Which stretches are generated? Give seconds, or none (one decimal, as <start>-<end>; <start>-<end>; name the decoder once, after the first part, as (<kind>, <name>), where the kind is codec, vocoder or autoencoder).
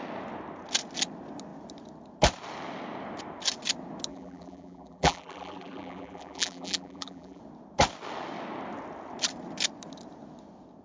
4.1-7.4 (vocoder, BigVGAN v2)